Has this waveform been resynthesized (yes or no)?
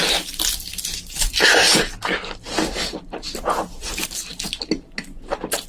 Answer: no